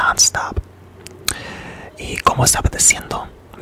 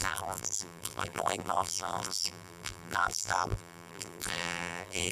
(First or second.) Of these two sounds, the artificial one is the second